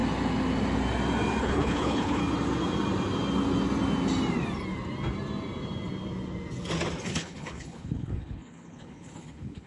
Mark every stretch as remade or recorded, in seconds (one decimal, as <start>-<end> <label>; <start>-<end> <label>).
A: 0.0-1.4 recorded; 1.4-2.2 remade; 2.2-7.0 recorded; 7.0-9.7 remade

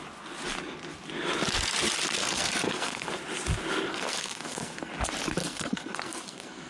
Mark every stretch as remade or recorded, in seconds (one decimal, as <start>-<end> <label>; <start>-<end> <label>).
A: 0.0-2.2 recorded; 2.2-3.1 remade; 3.1-3.9 recorded; 3.9-4.9 remade; 4.9-5.4 recorded; 5.4-6.7 remade